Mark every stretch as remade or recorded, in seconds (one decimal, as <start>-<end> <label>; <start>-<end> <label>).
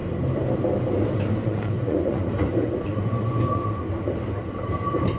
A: 0.0-1.4 recorded; 1.4-3.9 remade; 3.9-5.2 recorded